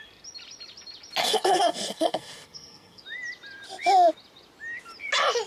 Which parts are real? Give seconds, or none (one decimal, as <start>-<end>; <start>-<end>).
0.0-1.2; 3.0-5.5